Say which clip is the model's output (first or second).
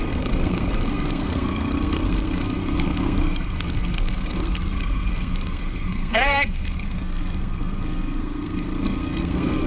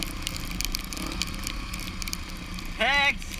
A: first